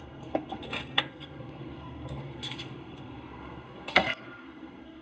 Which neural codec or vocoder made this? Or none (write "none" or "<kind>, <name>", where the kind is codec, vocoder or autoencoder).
codec, SNAC